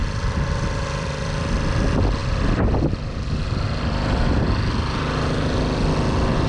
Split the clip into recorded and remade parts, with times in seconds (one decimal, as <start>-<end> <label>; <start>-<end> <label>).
0.0-1.4 remade; 1.4-2.2 recorded; 2.2-4.4 remade; 4.4-6.5 recorded